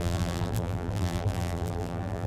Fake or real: fake